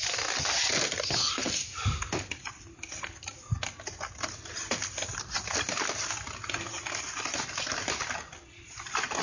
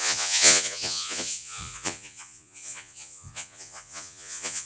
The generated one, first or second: second